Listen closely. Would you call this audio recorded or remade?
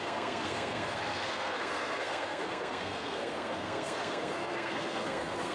remade